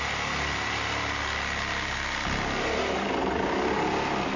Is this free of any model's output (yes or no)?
yes